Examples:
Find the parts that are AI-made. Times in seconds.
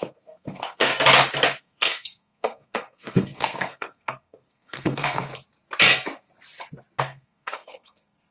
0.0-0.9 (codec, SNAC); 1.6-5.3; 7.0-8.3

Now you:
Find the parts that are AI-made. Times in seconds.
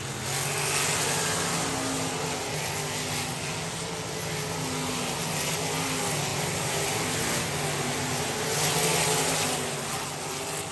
none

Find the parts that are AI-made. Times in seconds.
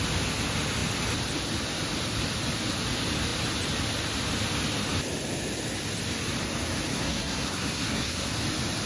6.9-8.3 (codec, SNAC)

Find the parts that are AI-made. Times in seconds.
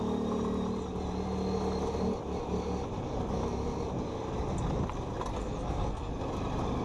5.3-6.1 (codec, SNAC)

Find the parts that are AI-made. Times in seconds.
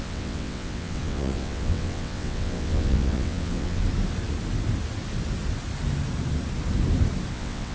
0.0-3.8 (vocoder, WaveNeXt); 7.3-7.7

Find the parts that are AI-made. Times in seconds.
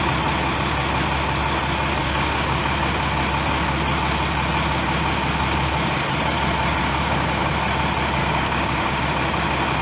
2.0-2.6 (codec, DAC); 6.8-7.5; 8.2-9.0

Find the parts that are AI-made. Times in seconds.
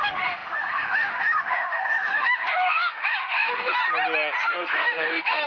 0.0-3.8 (autoencoder, DAC-VAE); 4.4-5.5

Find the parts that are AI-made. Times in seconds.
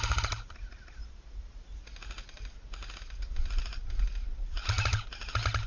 none